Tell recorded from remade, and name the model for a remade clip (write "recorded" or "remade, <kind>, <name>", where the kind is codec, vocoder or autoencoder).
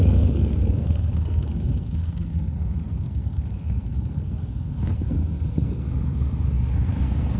remade, codec, SNAC